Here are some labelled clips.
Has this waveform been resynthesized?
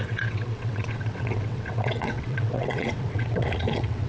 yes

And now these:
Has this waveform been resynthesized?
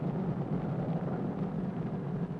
no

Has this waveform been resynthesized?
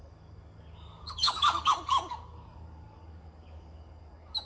yes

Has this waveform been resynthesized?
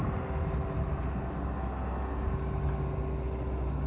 no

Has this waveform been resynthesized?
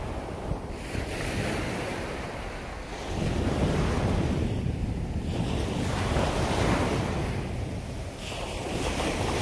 no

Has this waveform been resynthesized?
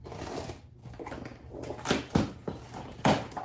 no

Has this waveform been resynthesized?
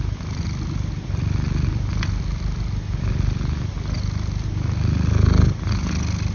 no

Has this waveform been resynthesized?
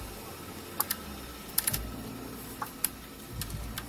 no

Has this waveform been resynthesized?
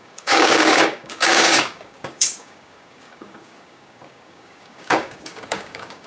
yes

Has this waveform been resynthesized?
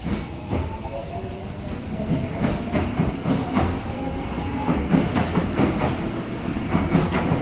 yes